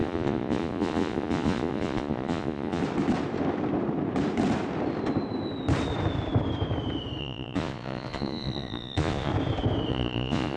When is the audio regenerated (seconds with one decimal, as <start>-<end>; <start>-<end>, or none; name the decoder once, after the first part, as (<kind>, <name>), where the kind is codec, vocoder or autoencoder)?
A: 0.0-2.8 (vocoder, Vocos); 7.2-9.3; 9.9-10.6